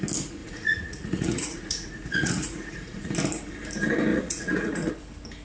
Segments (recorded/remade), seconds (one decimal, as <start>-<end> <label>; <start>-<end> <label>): 0.0-0.4 recorded; 0.4-3.1 remade; 3.1-4.1 recorded; 4.1-4.9 remade; 4.9-5.4 recorded